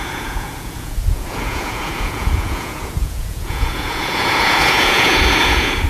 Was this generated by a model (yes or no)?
yes